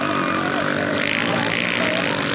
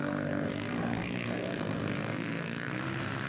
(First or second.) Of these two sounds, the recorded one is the first